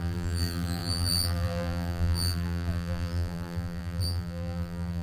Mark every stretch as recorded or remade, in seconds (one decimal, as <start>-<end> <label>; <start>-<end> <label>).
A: 0.0-5.0 remade